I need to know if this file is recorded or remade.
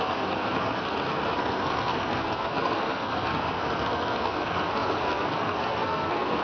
remade